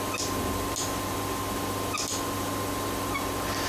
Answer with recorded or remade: recorded